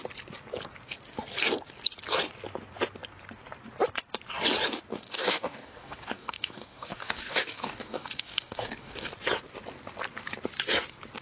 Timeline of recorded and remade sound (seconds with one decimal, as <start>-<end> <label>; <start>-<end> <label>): 0.0-4.9 recorded; 4.9-9.1 remade; 9.1-11.2 recorded